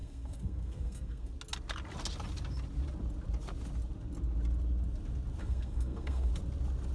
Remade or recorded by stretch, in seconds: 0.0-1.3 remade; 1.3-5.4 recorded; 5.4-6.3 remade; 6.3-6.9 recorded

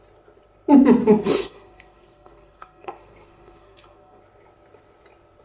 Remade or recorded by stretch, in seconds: 0.0-1.0 recorded; 1.0-4.2 remade; 4.2-5.4 recorded